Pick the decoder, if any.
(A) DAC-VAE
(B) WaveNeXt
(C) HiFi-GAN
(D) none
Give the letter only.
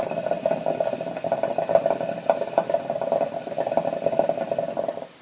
D